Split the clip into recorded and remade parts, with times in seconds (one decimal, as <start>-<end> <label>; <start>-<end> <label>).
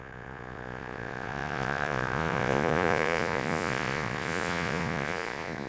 0.0-5.7 remade